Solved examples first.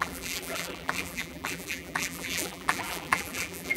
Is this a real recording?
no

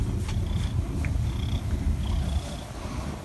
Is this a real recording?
yes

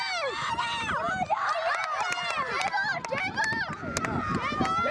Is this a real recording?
yes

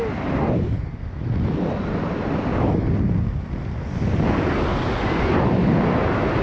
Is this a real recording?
yes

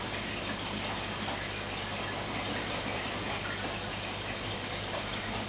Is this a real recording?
yes